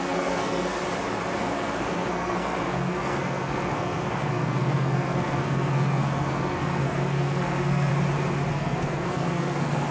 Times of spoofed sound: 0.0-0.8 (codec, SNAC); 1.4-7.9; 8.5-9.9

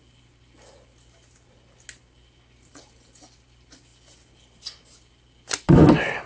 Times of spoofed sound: none